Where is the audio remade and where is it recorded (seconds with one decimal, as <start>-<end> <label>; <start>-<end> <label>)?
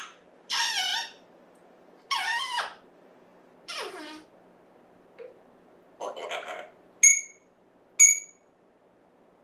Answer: 0.0-9.4 recorded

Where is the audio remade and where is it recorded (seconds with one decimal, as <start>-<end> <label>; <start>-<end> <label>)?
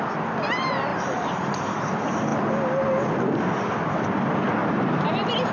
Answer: 0.0-0.9 recorded; 0.9-1.9 remade; 1.9-4.6 recorded; 4.6-5.5 remade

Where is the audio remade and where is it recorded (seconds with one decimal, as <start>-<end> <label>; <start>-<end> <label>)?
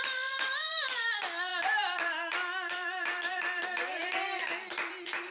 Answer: 0.0-5.3 remade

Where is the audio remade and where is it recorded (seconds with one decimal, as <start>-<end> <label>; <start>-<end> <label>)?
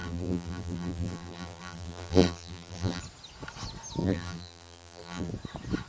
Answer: 0.0-3.0 remade; 3.0-4.0 recorded; 4.0-5.3 remade; 5.3-5.9 recorded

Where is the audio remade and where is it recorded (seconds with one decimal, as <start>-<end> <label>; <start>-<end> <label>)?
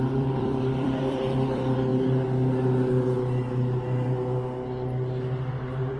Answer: 0.0-1.9 remade; 1.9-5.5 recorded; 5.5-6.0 remade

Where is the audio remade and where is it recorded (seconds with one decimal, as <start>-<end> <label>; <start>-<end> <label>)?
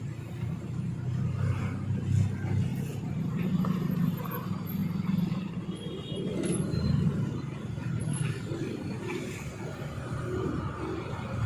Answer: 0.0-2.7 recorded; 2.7-4.2 remade; 4.2-8.0 recorded; 8.0-8.5 remade; 8.5-11.5 recorded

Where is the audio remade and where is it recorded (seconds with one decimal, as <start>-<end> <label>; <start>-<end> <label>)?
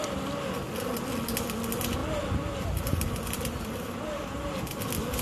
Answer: 0.0-2.0 recorded; 2.0-4.8 remade; 4.8-5.2 recorded